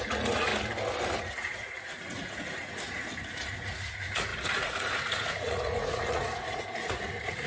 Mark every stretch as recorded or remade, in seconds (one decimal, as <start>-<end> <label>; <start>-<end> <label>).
0.0-0.5 remade; 0.5-1.2 recorded; 1.2-7.5 remade